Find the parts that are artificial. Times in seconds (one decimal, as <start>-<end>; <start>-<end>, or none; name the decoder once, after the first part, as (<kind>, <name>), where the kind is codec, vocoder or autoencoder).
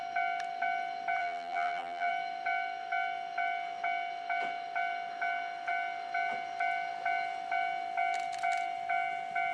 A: 1.2-2.1 (vocoder, BigVGAN v2)